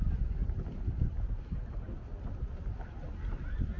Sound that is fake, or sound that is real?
real